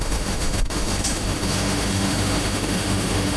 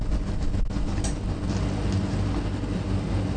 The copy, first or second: first